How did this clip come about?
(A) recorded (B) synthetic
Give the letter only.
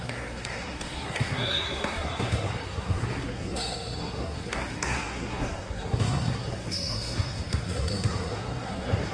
B